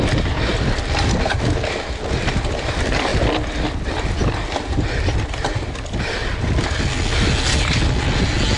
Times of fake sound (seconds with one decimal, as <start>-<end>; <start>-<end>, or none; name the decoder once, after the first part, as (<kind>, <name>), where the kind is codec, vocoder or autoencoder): none